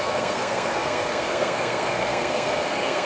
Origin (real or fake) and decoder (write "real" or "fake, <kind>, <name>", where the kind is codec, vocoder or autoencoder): fake, codec, SNAC